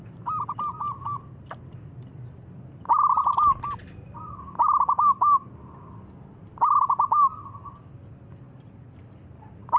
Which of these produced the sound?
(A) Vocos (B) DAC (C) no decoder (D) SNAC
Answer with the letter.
C